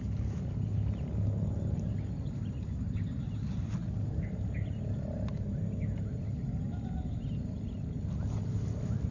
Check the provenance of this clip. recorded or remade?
recorded